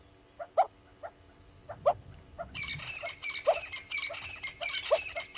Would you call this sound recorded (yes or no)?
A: yes